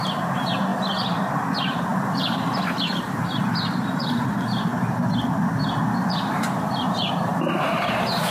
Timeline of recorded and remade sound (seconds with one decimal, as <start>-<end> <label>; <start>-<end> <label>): 0.0-4.7 remade; 4.7-6.1 recorded; 6.1-8.3 remade